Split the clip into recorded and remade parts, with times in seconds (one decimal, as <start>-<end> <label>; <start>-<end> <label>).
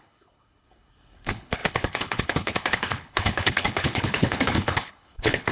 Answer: 0.0-5.5 remade